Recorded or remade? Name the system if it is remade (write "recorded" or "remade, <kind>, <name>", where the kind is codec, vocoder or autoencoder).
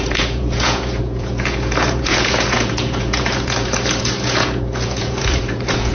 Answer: remade, vocoder, Vocos